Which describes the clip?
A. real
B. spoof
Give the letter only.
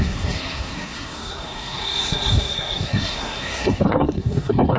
B